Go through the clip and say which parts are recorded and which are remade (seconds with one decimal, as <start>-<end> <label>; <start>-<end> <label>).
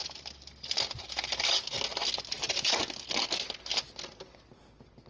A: 0.0-5.1 recorded